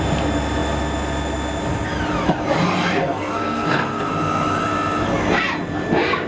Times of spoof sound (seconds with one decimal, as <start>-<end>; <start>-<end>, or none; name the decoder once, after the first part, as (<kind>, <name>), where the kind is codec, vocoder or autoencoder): 3.0-4.1 (codec, SNAC)